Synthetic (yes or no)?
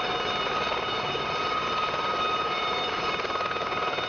no